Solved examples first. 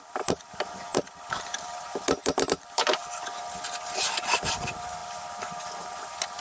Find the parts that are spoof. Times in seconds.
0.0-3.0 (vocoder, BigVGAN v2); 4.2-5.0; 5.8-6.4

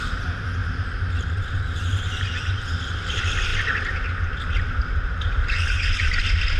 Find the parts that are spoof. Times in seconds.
none

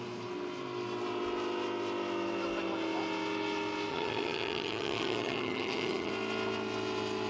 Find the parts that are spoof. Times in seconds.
3.9-6.1 (vocoder, HiFi-GAN)